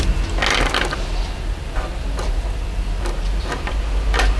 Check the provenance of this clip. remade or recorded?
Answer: recorded